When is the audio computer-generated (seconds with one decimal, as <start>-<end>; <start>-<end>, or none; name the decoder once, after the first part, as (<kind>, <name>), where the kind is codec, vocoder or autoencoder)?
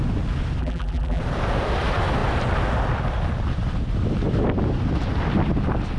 0.6-1.2 (vocoder, BigVGAN v2)